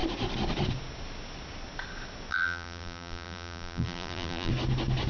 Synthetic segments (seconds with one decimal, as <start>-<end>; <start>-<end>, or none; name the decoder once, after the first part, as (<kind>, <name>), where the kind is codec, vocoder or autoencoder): 2.3-4.5 (vocoder, BigVGAN v2)